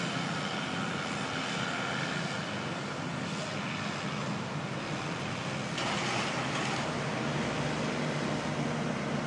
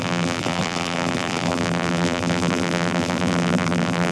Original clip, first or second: first